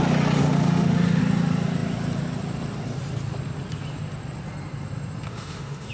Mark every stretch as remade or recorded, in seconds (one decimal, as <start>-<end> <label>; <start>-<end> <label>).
0.0-0.4 recorded; 0.4-1.2 remade; 1.2-5.3 recorded; 5.3-5.9 remade